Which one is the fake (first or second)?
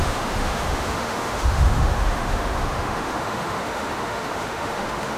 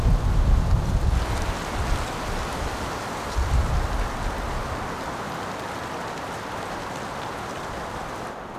first